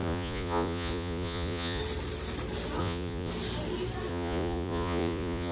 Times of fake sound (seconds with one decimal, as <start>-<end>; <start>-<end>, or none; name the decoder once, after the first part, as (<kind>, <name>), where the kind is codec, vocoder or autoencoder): 0.0-1.8 (vocoder, Vocos); 2.8-3.3; 4.1-5.5